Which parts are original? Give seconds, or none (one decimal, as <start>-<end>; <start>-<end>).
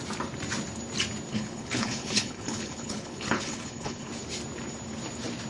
0.0-1.3; 4.1-5.5